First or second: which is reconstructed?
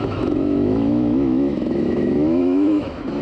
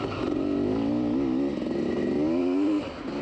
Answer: first